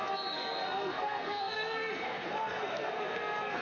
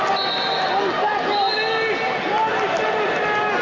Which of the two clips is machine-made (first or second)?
first